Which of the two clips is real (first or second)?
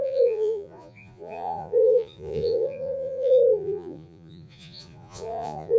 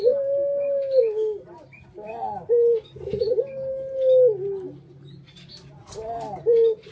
second